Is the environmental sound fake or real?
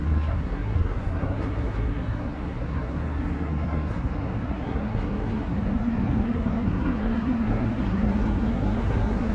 fake